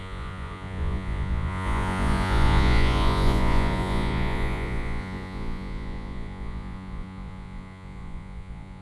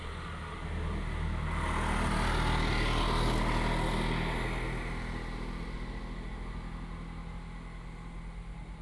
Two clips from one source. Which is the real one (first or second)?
second